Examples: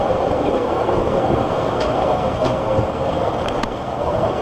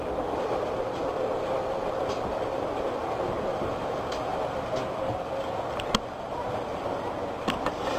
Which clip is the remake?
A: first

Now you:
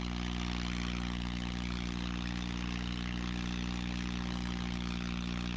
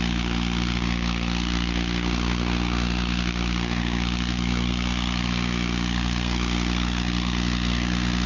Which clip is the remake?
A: second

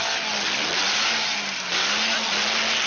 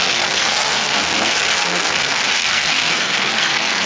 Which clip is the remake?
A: second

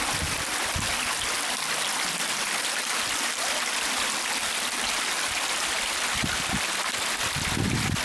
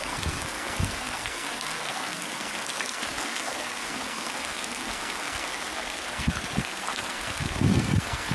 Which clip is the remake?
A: second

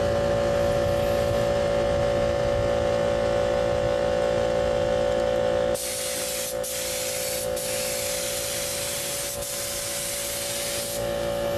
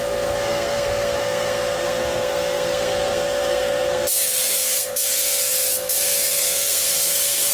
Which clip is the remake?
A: second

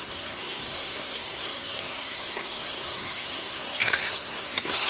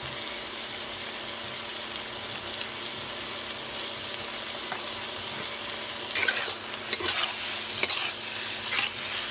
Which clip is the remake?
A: first